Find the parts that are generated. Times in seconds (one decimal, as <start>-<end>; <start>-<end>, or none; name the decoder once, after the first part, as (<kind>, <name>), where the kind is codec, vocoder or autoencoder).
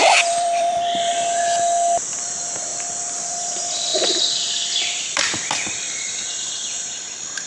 0.0-1.1 (vocoder, BigVGAN v2); 2.0-2.7; 3.3-3.9; 4.5-7.5